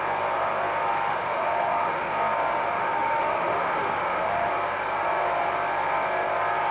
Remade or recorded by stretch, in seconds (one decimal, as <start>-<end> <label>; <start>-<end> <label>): 0.0-1.1 recorded; 1.1-2.1 remade; 2.1-2.5 recorded; 2.5-4.5 remade; 4.5-6.7 recorded